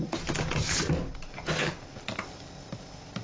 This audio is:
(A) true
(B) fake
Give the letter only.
A